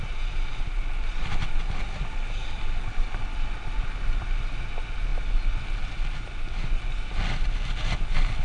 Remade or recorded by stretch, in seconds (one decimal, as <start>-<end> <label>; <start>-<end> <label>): 0.0-8.4 recorded